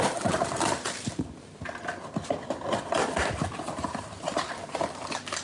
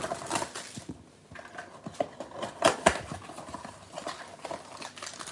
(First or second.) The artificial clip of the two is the first